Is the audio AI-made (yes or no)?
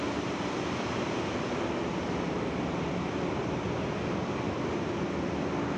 no